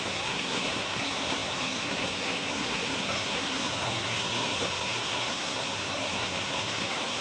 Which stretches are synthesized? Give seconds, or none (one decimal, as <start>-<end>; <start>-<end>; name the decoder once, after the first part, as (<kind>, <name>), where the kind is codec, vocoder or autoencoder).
0.0-7.2 (codec, SNAC)